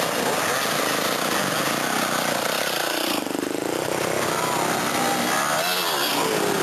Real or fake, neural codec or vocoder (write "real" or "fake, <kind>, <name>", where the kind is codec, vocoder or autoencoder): real